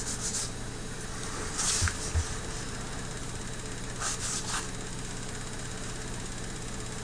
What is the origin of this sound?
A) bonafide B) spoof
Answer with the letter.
A